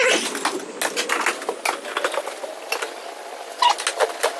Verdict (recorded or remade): recorded